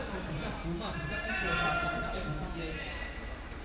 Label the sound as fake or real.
real